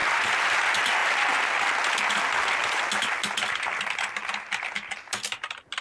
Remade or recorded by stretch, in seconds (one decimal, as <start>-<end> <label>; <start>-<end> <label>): 0.0-5.8 recorded